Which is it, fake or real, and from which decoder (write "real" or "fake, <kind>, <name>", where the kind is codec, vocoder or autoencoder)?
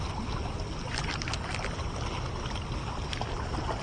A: real